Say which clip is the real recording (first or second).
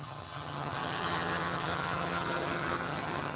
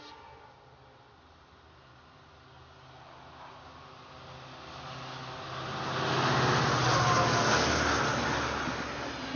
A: second